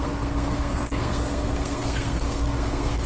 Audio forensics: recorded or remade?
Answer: remade